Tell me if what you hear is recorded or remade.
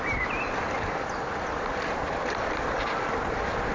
recorded